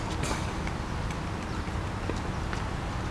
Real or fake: real